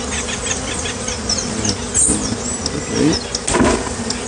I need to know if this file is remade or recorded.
recorded